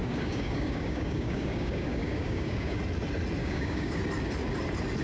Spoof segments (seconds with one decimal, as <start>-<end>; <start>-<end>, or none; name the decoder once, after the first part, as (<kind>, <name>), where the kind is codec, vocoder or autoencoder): 0.0-2.8 (codec, DAC); 3.4-4.0